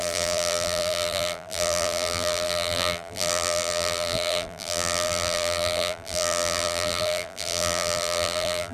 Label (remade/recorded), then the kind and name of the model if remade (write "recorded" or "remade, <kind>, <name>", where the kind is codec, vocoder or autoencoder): remade, vocoder, BigVGAN v2